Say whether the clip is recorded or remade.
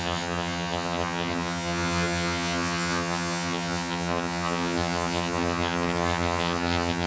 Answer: remade